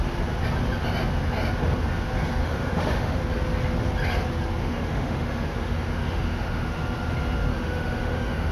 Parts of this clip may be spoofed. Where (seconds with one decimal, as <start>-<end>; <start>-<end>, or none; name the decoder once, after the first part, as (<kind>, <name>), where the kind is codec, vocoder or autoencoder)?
2.4-3.2 (autoencoder, DAC-VAE); 4.6-6.7; 7.5-8.5